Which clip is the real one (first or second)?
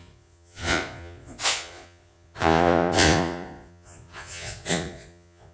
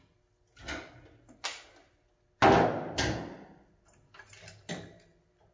second